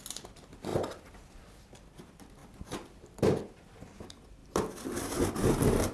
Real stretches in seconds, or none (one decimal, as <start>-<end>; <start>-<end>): 0.0-0.7; 2.0-4.4; 5.2-5.9